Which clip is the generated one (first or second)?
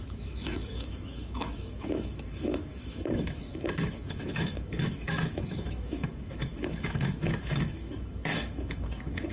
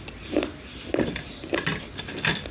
first